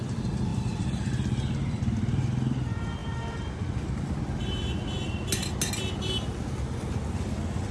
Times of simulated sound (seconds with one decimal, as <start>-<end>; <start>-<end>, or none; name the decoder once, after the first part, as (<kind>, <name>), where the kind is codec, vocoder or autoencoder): 0.5-1.8 (vocoder, BigVGAN v2); 3.0-4.2